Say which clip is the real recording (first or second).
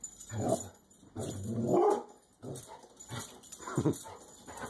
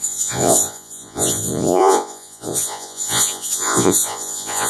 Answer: first